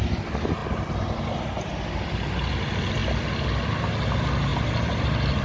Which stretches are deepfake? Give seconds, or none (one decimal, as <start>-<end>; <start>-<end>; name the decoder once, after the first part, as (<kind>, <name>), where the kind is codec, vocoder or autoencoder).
none